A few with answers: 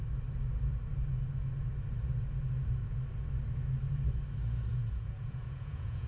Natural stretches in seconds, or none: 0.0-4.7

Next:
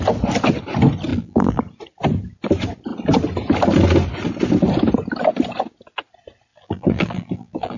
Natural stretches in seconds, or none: 0.0-1.1; 1.6-6.5

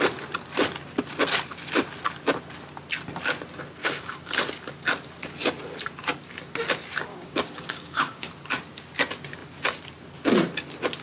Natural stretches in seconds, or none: 0.0-3.8; 4.3-7.1; 8.3-11.0

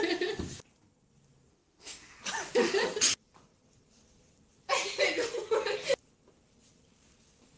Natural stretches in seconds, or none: 0.0-1.5; 2.2-7.6

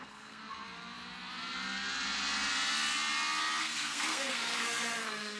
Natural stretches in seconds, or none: 0.4-3.6

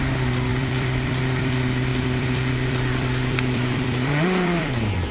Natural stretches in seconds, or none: 0.0-0.5; 1.5-1.9

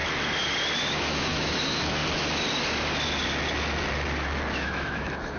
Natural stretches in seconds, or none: 0.0-0.9; 2.0-4.5